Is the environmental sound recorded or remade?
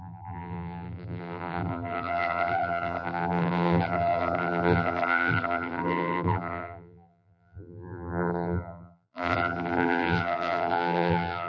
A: remade